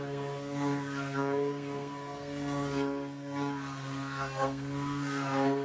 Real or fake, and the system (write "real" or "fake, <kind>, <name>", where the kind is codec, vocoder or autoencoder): fake, codec, SNAC